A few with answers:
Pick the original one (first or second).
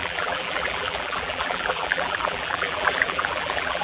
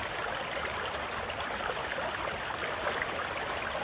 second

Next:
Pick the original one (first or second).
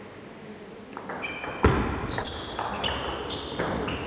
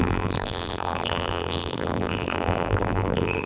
first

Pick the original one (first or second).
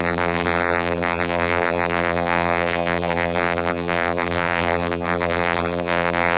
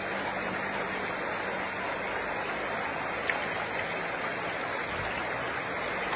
second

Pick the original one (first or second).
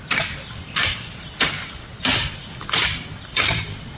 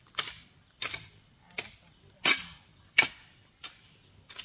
first